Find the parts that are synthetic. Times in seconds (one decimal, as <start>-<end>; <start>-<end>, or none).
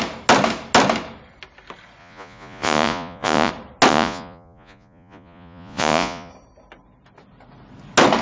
2.0-3.5; 3.9-6.3